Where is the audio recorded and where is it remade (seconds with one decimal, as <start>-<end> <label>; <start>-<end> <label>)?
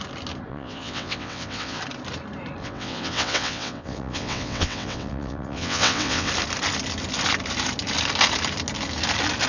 0.0-0.5 recorded; 0.5-1.8 remade; 1.8-2.6 recorded; 2.6-6.3 remade; 6.3-9.5 recorded